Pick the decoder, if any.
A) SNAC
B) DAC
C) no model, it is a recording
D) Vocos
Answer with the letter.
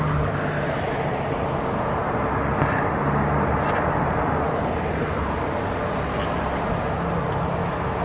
C